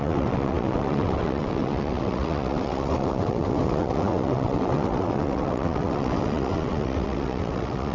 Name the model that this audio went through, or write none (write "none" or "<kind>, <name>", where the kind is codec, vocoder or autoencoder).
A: vocoder, WaveNeXt